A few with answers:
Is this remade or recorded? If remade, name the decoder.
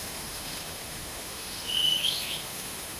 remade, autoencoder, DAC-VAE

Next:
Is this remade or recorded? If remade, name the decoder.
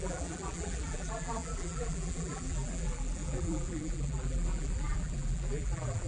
remade, vocoder, BigVGAN v2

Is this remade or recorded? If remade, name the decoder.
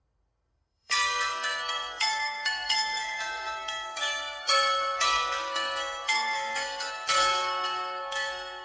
remade, codec, SNAC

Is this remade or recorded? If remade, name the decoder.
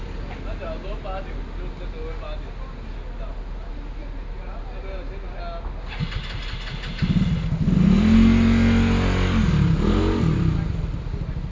recorded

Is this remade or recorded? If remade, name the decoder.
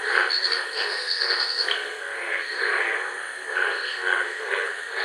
remade, codec, SNAC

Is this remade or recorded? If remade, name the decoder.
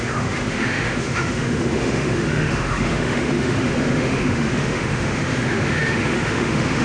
remade, autoencoder, DAC-VAE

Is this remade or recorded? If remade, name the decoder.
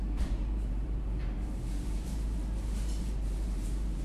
remade, vocoder, BigVGAN v2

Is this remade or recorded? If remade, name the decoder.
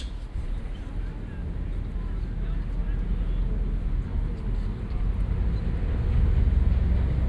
recorded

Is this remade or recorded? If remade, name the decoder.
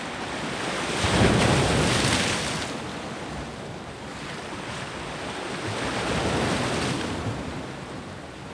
recorded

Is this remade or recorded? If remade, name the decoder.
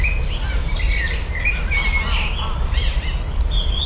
recorded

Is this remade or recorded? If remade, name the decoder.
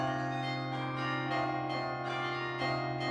recorded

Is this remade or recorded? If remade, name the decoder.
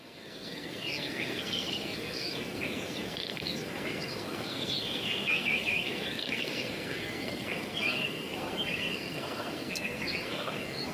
remade, codec, SNAC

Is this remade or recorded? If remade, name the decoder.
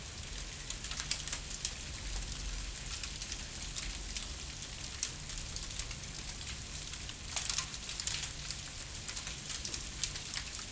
recorded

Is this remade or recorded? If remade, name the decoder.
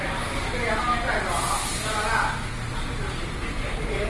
recorded